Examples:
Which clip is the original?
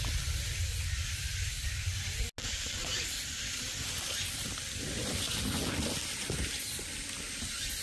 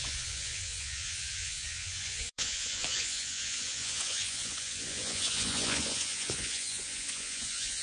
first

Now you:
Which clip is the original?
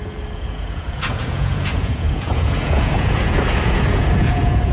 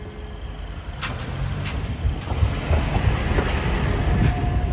second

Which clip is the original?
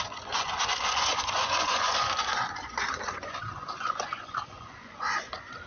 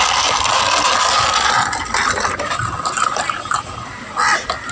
second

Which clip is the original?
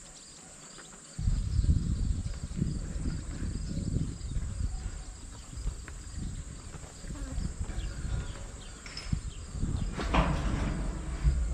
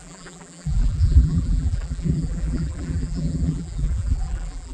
first